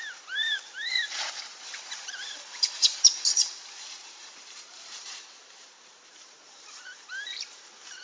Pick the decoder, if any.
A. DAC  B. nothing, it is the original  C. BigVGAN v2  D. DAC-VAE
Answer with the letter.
C